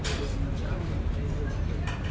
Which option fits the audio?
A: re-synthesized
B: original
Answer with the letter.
B